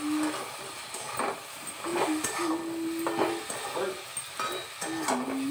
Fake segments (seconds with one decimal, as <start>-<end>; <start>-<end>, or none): none